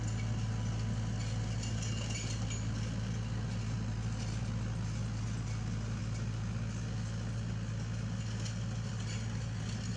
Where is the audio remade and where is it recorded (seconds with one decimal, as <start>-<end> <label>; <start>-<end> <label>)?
0.0-10.0 recorded